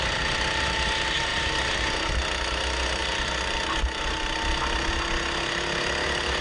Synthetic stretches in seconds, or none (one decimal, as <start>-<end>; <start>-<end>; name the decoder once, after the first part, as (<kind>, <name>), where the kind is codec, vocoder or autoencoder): none